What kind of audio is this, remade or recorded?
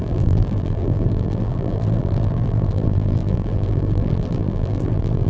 remade